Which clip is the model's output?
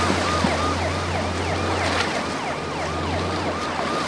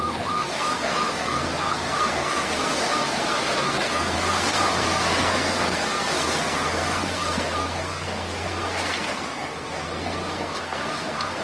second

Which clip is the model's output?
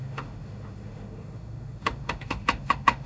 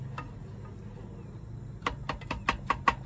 first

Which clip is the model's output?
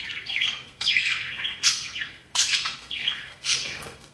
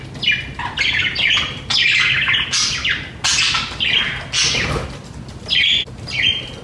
first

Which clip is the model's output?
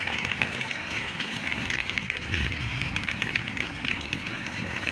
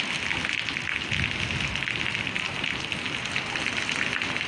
first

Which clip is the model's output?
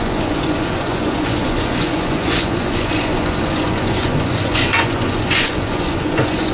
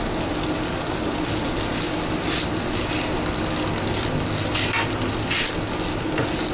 first